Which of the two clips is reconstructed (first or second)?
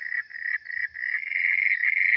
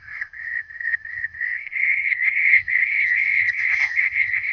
second